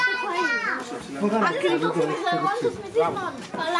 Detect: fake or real real